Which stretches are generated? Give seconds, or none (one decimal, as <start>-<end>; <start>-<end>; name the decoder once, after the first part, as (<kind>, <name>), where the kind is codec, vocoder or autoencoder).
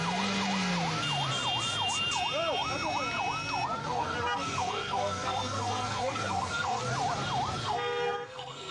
3.8-6.8 (codec, SNAC); 7.6-8.7